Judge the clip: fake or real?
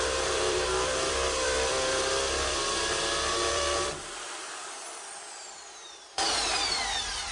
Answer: fake